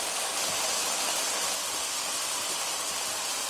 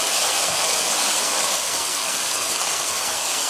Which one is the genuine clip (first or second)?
first